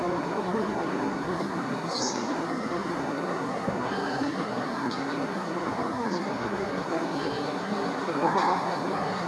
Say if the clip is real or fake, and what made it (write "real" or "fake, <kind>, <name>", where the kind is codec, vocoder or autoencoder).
fake, codec, SNAC